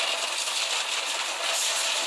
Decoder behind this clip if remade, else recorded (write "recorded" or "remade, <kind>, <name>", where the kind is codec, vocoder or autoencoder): recorded